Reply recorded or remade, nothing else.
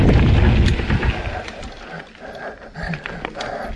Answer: recorded